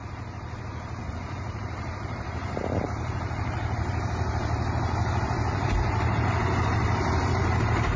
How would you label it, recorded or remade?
remade